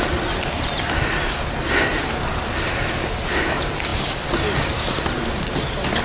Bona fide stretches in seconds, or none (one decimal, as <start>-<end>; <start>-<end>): 0.0-6.0